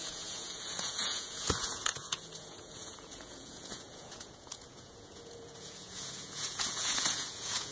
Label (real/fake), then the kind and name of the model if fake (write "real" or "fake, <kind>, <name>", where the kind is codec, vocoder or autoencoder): fake, vocoder, Vocos